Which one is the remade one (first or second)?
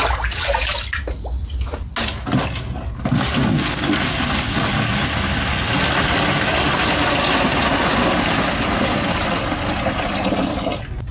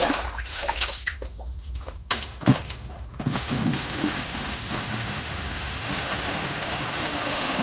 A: second